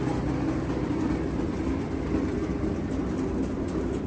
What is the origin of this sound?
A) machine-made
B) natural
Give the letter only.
B